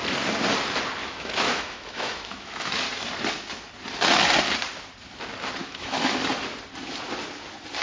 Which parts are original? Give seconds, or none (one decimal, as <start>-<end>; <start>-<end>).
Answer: 0.0-1.0; 2.7-5.6; 6.2-7.8